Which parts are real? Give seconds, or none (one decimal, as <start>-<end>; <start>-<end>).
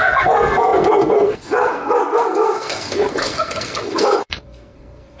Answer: none